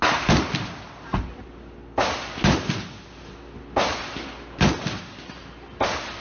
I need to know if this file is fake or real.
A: real